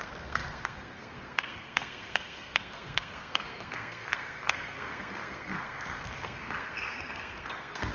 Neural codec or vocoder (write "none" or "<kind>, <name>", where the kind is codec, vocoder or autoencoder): codec, SNAC